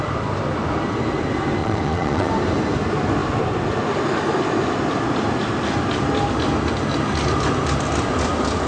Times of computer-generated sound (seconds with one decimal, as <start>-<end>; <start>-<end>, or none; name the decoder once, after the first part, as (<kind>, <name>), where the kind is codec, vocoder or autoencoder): 1.6-2.3 (vocoder, Vocos)